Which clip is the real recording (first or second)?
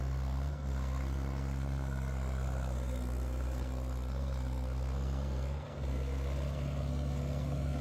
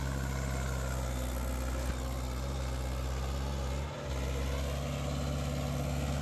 second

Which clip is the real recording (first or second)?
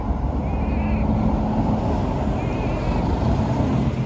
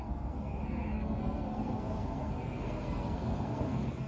first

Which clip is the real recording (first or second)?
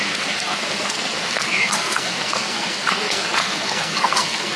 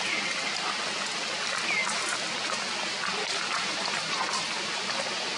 second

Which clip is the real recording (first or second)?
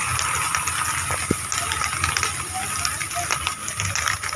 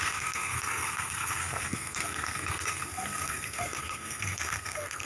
first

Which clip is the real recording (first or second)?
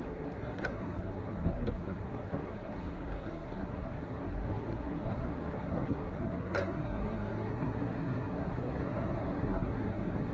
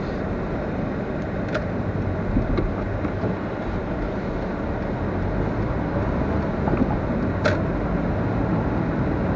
second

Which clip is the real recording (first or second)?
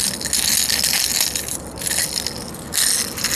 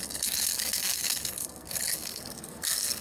first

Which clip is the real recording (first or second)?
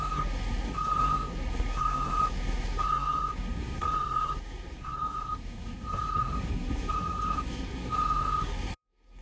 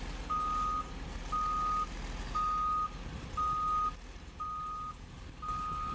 second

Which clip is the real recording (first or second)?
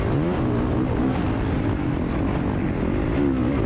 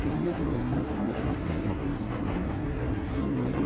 first